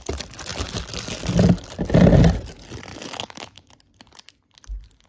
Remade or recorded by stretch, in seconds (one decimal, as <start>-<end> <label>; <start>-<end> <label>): 0.0-2.9 recorded; 2.9-3.7 remade; 3.7-5.1 recorded